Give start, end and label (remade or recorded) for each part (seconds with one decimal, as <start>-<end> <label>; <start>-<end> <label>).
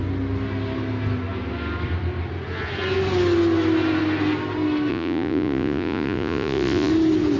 0.0-4.9 recorded; 4.9-6.9 remade; 6.9-7.4 recorded